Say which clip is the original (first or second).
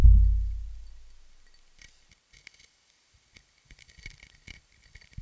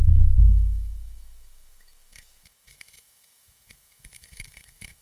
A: first